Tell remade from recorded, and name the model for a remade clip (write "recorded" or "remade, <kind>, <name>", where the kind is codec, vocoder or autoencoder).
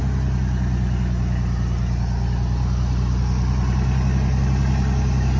recorded